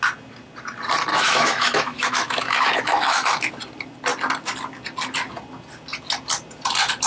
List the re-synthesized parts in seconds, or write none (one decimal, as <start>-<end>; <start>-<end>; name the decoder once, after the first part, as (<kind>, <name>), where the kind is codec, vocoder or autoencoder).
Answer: 1.1-3.5 (autoencoder, DAC-VAE)